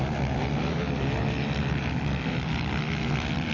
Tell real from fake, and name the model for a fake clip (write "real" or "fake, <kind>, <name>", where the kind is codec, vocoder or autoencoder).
real